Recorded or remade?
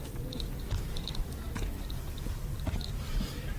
recorded